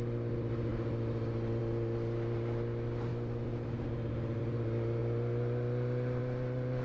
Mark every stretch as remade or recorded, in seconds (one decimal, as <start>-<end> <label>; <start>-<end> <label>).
0.0-6.8 recorded